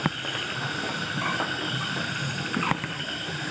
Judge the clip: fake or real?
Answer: real